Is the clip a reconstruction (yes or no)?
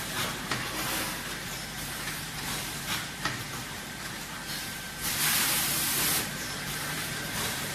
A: yes